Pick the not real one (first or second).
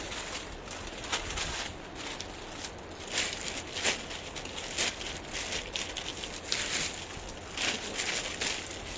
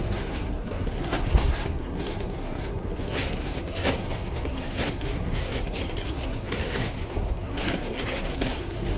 second